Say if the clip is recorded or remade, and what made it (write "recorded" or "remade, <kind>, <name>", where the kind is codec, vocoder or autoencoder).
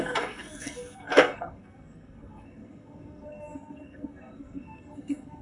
remade, codec, SNAC